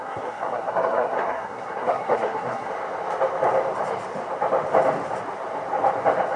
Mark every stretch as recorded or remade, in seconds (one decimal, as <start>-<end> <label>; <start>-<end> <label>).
0.0-2.7 remade; 2.7-6.4 recorded